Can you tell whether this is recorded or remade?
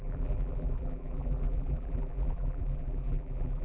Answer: remade